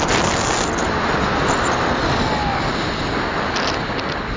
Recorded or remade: recorded